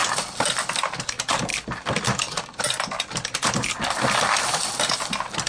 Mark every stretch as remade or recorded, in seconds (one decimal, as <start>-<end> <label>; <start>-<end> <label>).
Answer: 0.0-5.5 recorded